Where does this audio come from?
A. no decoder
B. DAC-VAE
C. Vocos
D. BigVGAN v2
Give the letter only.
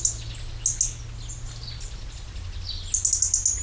A